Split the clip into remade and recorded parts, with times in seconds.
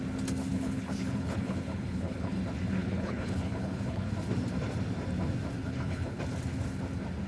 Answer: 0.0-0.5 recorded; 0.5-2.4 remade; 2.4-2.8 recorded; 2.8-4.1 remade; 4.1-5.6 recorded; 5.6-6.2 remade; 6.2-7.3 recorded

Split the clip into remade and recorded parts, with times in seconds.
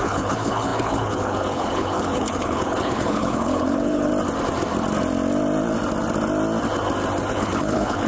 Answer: 0.0-4.1 remade; 4.1-7.3 recorded; 7.3-8.1 remade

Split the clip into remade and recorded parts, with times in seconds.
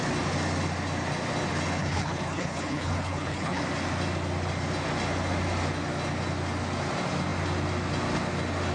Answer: 0.0-1.8 recorded; 1.8-3.6 remade; 3.6-8.7 recorded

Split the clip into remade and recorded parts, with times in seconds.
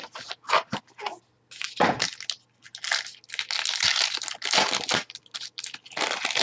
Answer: 0.0-6.4 recorded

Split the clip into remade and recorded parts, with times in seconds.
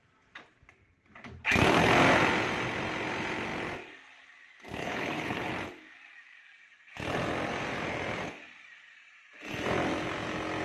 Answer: 0.0-4.8 recorded; 4.8-5.5 remade; 5.5-10.6 recorded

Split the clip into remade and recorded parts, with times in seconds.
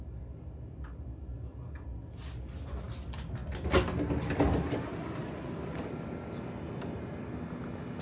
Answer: 0.0-8.0 recorded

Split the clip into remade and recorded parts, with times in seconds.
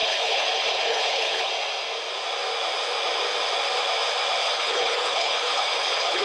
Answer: 0.0-1.5 remade; 1.5-4.4 recorded; 4.4-6.2 remade